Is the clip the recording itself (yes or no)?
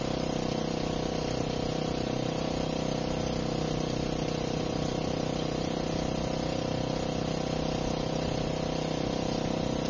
yes